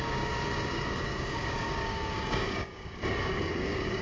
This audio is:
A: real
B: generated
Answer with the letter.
B